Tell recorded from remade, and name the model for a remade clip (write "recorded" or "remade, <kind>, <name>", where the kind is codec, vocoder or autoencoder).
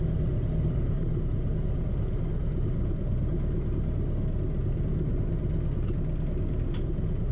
recorded